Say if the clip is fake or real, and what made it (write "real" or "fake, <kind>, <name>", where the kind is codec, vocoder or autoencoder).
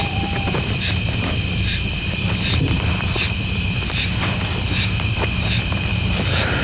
fake, vocoder, BigVGAN v2